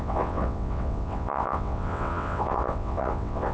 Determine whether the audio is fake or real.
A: fake